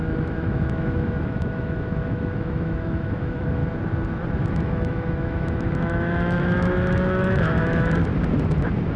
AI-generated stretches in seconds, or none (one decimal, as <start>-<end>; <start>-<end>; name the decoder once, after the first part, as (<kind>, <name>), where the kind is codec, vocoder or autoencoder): 0.0-3.6 (autoencoder, DAC-VAE); 4.5-8.0